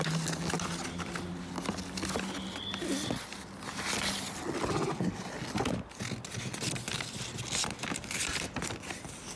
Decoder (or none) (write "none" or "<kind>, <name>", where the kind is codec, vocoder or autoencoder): none